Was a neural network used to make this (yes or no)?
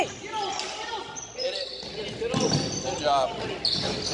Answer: no